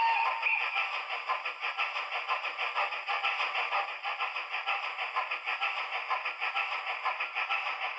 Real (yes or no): yes